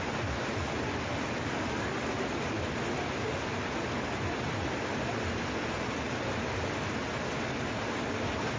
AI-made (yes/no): no